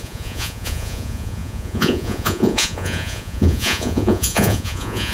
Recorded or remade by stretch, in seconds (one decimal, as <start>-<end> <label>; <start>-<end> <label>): 0.0-5.1 remade